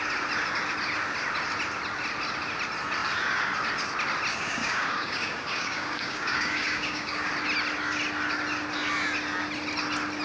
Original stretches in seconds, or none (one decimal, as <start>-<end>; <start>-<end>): 0.0-4.3; 7.3-10.2